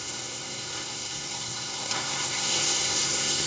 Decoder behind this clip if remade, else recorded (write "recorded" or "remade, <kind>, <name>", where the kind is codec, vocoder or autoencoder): remade, codec, SNAC